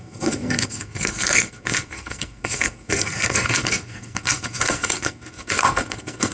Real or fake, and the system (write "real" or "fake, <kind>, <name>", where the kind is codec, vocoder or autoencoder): fake, codec, SNAC